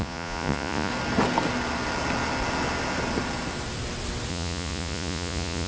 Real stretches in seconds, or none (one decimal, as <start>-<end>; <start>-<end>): 0.9-4.3